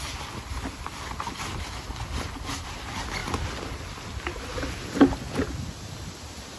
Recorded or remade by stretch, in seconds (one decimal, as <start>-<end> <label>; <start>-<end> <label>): 0.0-6.6 recorded